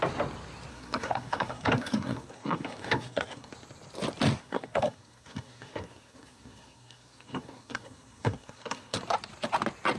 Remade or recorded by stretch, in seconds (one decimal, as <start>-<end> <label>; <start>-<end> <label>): 0.0-0.7 recorded; 0.7-3.5 remade; 3.5-4.4 recorded; 4.4-9.0 remade; 9.0-10.0 recorded